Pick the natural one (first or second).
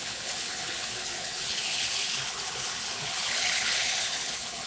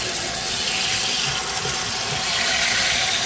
second